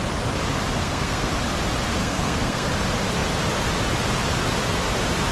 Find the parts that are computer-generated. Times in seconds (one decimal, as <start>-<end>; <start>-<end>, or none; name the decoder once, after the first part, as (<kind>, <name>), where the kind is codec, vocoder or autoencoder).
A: 0.8-1.3 (codec, SNAC); 2.0-2.7